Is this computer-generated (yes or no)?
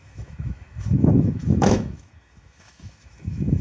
yes